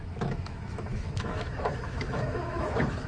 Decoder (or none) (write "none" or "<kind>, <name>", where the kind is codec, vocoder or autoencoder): autoencoder, DAC-VAE